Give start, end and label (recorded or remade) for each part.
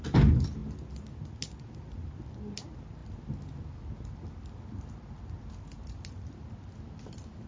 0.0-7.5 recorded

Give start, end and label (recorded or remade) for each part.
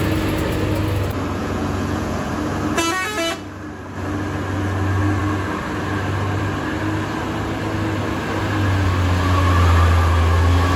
0.0-1.4 recorded; 1.4-2.3 remade; 2.3-10.8 recorded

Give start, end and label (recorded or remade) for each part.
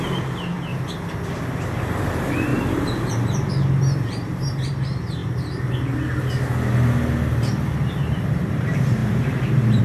0.0-0.7 remade; 0.7-1.8 recorded; 1.8-5.2 remade; 5.2-7.9 recorded; 7.9-9.8 remade